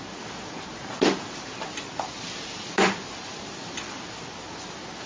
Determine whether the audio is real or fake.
real